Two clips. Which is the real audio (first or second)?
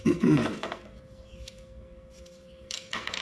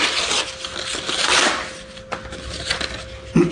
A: second